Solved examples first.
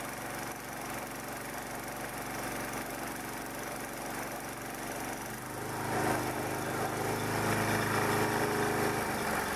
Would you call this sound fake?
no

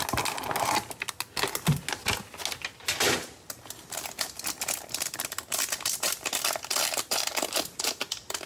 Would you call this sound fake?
no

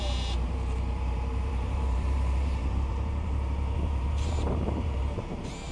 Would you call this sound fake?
yes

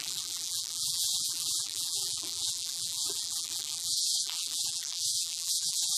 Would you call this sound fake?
yes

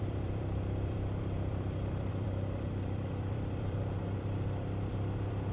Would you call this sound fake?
yes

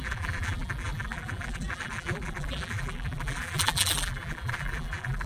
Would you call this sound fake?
yes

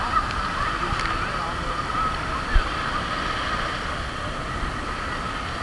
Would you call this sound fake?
no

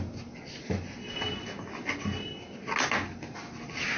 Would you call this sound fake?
no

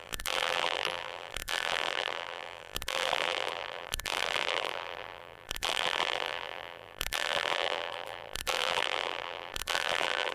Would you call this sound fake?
yes